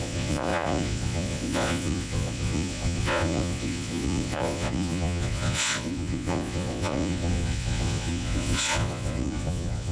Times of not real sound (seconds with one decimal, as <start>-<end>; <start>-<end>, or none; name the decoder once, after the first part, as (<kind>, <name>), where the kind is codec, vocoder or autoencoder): 0.0-9.9 (vocoder, Vocos)